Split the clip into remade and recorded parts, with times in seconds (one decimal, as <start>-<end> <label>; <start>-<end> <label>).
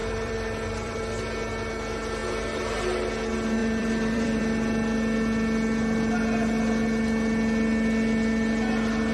0.0-1.0 remade; 1.0-3.6 recorded; 3.6-4.4 remade; 4.4-9.1 recorded